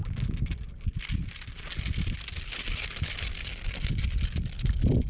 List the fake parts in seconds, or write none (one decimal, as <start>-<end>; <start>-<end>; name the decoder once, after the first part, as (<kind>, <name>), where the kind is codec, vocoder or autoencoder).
none